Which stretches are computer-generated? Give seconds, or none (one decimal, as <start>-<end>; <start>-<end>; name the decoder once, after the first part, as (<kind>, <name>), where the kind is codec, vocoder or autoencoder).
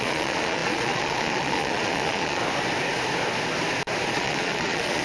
0.0-2.4 (vocoder, Vocos); 4.1-5.0